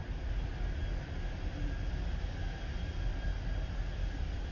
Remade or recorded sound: recorded